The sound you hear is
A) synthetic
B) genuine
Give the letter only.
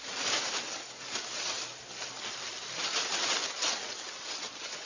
B